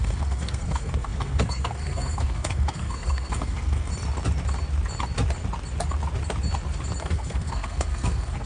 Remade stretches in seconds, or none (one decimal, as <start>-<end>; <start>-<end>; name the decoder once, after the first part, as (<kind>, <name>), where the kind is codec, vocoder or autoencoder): 0.0-3.9 (codec, SNAC); 7.0-8.5